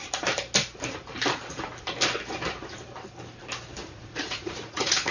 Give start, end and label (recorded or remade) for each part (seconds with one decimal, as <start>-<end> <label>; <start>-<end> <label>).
0.0-3.8 recorded; 3.8-5.1 remade